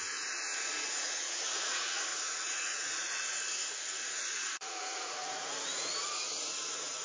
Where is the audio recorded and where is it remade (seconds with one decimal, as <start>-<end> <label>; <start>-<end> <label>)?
0.0-7.0 remade